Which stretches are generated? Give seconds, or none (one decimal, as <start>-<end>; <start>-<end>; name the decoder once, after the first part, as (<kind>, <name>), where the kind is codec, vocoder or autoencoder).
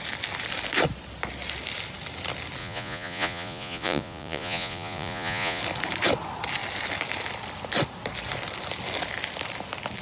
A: 2.6-5.6 (vocoder, Vocos)